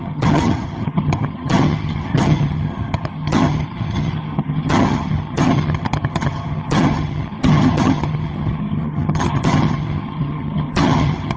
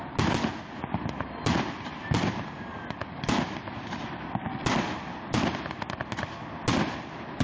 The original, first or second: second